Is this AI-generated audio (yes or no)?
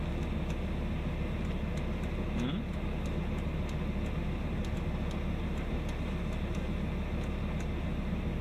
no